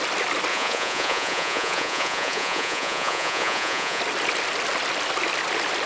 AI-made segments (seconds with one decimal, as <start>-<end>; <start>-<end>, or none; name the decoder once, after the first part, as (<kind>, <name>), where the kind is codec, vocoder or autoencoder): 0.5-4.0 (vocoder, Vocos)